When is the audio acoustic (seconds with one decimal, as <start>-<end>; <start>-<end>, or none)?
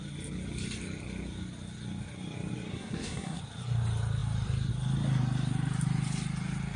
0.0-2.7; 3.4-6.8